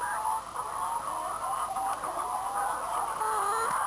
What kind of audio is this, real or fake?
real